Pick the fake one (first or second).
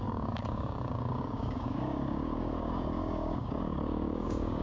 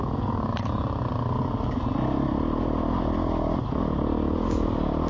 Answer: first